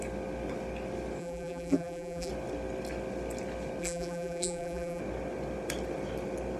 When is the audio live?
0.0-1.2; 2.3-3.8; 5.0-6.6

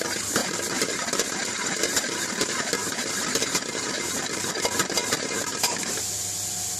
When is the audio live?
0.0-0.4; 4.5-5.0; 5.9-6.8

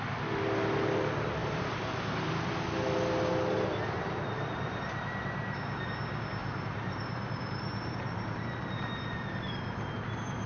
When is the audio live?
0.0-1.4; 2.3-6.4; 9.9-10.5

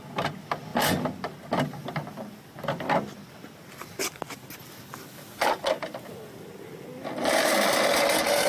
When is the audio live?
0.0-8.5

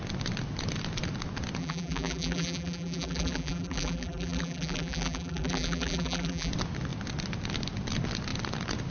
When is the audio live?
0.0-1.6; 6.5-8.9

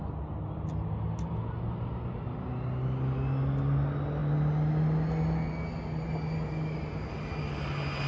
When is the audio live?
0.0-8.1